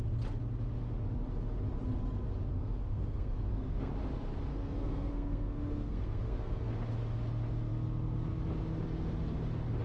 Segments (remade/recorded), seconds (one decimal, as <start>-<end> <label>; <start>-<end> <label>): 0.0-2.6 recorded; 2.6-3.9 remade; 3.9-4.5 recorded; 4.5-6.7 remade; 6.7-9.8 recorded